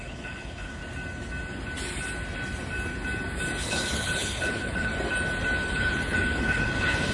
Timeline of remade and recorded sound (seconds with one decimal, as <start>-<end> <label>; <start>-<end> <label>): 0.0-0.8 remade; 0.8-3.6 recorded; 3.6-4.9 remade; 4.9-5.7 recorded; 5.7-7.1 remade